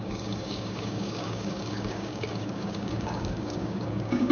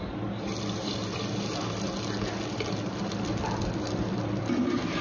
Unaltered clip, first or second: second